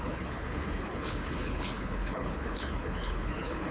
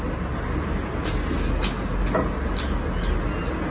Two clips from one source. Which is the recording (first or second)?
second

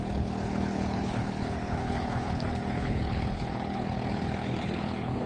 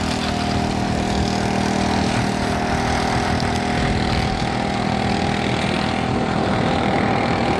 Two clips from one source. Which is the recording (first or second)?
second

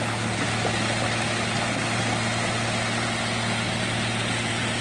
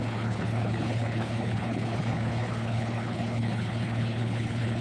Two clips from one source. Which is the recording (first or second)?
first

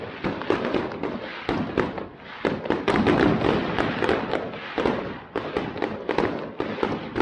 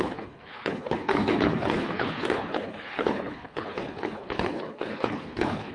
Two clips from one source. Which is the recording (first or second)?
first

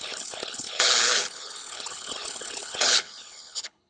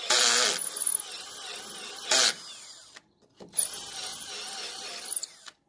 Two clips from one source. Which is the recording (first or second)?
second